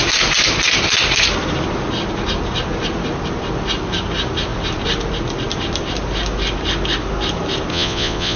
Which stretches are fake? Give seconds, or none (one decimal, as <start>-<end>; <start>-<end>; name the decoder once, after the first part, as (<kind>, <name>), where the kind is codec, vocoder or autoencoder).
7.7-8.4 (vocoder, Vocos)